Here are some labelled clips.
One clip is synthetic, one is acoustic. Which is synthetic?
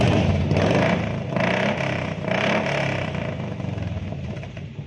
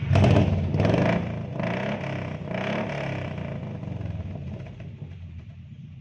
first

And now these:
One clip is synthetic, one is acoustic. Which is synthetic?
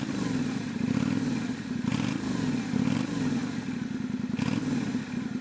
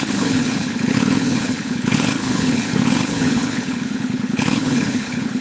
second